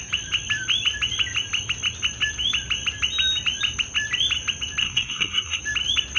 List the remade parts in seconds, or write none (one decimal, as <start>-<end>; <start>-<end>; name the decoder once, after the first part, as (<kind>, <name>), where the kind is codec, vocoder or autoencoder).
4.8-5.6 (codec, SNAC)